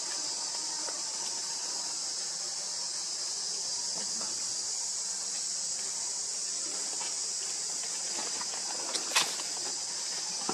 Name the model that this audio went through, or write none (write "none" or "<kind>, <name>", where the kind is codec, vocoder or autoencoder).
none